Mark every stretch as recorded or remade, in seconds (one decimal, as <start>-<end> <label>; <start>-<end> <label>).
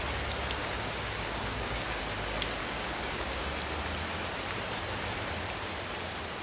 0.0-0.6 recorded; 0.6-2.0 remade; 2.0-2.6 recorded; 2.6-3.4 remade; 3.4-6.4 recorded